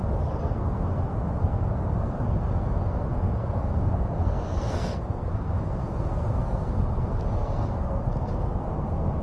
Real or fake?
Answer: fake